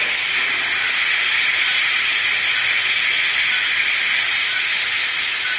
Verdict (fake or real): real